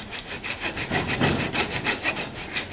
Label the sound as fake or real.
real